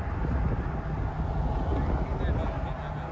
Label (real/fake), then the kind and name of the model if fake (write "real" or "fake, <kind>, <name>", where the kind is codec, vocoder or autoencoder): real